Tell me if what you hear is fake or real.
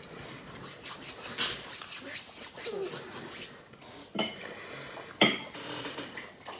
real